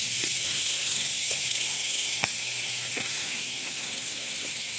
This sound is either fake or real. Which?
fake